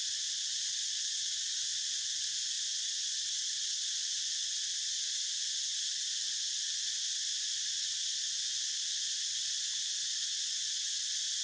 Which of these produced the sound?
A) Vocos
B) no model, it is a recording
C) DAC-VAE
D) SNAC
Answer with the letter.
B